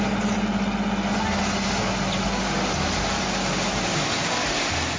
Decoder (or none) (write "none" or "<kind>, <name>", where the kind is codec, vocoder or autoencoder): none